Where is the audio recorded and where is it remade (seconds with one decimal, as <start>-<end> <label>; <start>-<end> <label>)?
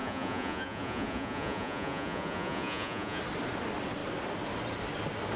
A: 0.0-3.2 remade; 3.2-5.4 recorded